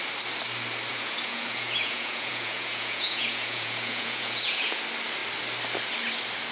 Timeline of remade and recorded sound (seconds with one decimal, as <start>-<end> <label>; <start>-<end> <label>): 0.0-0.9 recorded; 0.9-4.8 remade; 4.8-6.5 recorded